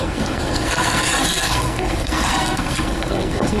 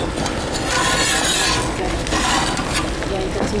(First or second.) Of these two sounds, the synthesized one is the first